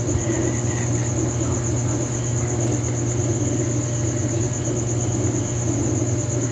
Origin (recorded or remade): recorded